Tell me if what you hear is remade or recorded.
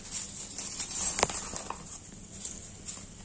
recorded